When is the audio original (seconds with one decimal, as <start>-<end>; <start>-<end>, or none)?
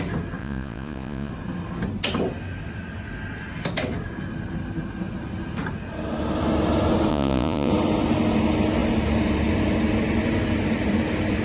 0.0-0.4; 1.3-7.1; 7.7-11.4